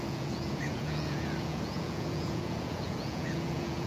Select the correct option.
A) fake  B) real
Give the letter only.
A